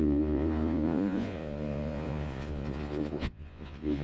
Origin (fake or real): fake